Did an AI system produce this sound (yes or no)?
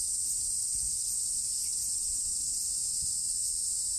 no